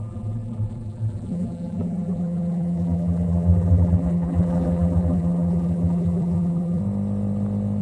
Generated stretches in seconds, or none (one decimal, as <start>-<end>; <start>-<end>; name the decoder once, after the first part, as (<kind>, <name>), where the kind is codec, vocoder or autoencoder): 0.0-6.8 (vocoder, BigVGAN v2)